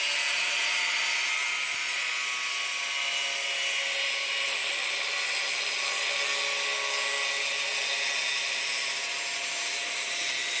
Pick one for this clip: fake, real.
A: real